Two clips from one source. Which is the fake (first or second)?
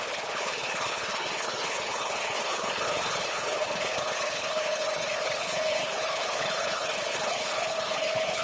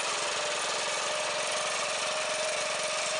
first